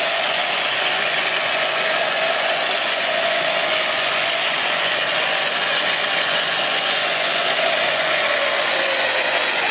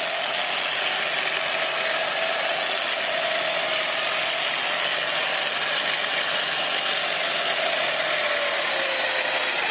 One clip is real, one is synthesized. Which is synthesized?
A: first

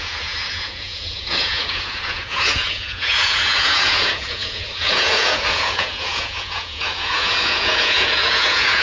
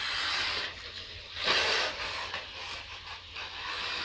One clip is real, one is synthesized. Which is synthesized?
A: first